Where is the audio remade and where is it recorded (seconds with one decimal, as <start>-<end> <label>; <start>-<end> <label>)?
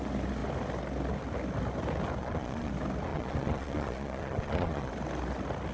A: 0.0-2.2 recorded; 2.2-2.7 remade; 2.7-3.1 recorded; 3.1-4.9 remade; 4.9-5.7 recorded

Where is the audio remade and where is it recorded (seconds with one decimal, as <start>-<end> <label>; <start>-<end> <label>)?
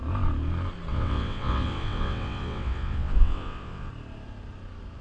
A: 0.0-0.9 recorded; 0.9-3.9 remade; 3.9-5.0 recorded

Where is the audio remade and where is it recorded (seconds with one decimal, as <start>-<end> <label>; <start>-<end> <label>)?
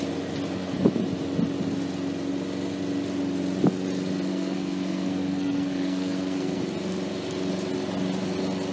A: 0.0-4.3 recorded; 4.3-6.6 remade; 6.6-8.7 recorded